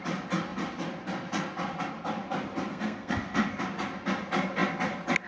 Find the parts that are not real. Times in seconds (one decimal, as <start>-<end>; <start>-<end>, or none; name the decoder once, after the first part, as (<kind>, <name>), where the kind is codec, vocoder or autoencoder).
2.7-3.6 (codec, SNAC)